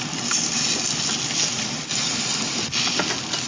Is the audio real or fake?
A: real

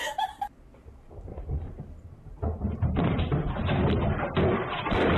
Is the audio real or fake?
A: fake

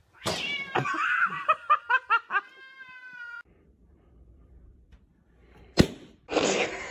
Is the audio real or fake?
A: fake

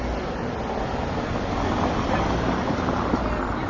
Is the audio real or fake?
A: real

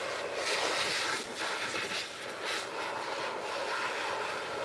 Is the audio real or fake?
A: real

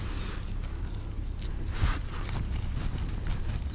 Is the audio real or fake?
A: real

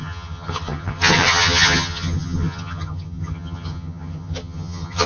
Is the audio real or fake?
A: fake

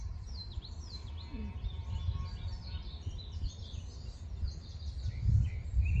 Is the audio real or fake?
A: real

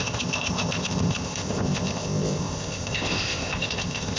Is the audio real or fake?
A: fake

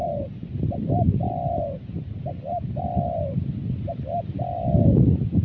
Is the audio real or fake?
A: real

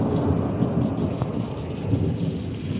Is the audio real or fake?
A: real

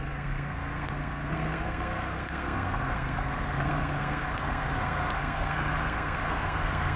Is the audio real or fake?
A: fake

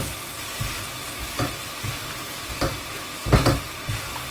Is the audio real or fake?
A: real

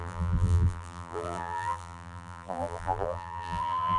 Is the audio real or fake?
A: fake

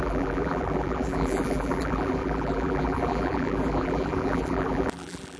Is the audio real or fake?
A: fake